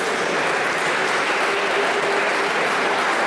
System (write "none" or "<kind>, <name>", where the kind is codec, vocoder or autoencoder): none